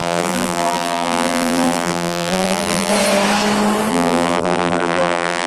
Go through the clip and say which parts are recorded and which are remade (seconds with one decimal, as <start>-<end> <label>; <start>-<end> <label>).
0.0-2.9 remade; 2.9-3.9 recorded; 3.9-5.5 remade